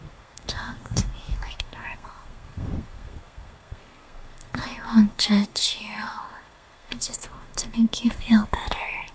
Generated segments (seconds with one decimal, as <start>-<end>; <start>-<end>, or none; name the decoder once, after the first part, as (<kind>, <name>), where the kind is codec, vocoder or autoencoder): 0.0-9.1 (codec, SNAC)